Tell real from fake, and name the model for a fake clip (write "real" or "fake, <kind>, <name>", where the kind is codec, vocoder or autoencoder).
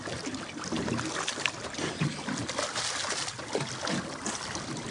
real